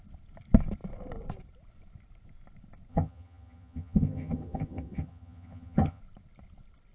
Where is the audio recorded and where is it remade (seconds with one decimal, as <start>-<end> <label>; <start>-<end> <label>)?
0.0-2.9 recorded; 2.9-6.0 remade; 6.0-6.9 recorded